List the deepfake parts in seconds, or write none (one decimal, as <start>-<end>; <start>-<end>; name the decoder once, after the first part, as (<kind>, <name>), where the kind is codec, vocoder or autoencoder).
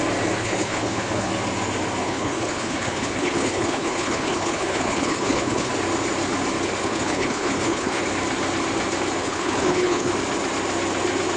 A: 0.4-1.3 (codec, HILCodec); 2.0-5.7; 6.8-8.0; 9.2-10.1